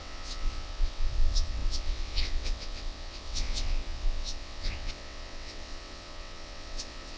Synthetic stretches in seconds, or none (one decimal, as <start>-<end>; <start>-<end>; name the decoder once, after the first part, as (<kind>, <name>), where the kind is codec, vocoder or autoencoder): 0.0-7.2 (vocoder, WaveNeXt)